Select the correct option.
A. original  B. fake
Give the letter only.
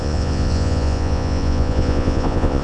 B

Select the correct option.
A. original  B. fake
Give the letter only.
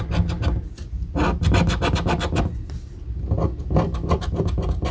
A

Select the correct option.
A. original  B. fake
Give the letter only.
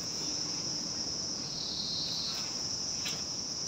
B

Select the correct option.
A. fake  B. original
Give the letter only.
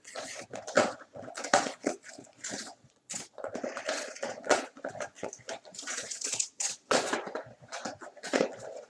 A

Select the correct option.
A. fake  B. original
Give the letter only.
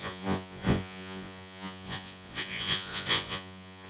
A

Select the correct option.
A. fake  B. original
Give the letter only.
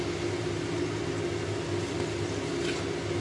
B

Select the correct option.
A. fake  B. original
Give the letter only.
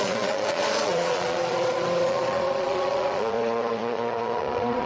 A